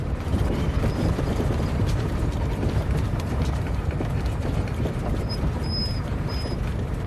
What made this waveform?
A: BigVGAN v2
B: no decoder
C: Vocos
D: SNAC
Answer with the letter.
A